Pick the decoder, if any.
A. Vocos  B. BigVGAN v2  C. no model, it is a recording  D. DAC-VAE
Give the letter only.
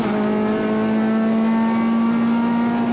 C